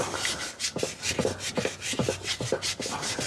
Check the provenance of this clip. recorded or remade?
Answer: recorded